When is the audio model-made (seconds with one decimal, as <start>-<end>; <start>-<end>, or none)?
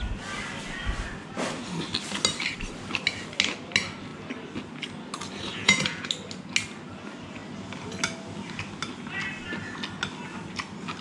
5.5-6.1